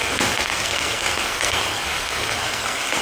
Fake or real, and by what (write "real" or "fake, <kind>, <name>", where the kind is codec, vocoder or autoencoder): fake, codec, SNAC